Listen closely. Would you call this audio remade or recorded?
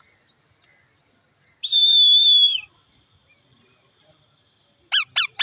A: recorded